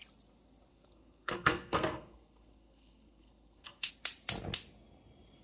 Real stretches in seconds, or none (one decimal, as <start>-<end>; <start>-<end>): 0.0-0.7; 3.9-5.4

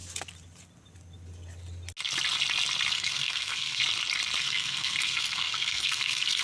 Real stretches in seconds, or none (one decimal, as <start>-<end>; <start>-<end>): 0.0-2.9; 3.8-4.4

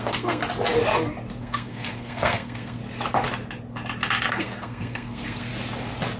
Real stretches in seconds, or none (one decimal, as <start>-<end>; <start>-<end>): 0.4-1.4; 2.8-4.3; 5.5-6.2